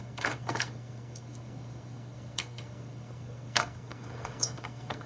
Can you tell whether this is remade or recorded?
remade